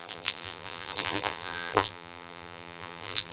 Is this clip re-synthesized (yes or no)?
yes